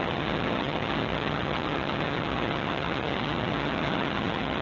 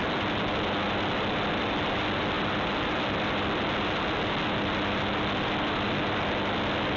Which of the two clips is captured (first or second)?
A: second